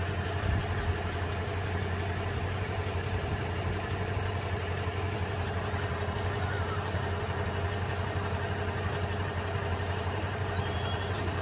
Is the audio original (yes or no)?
no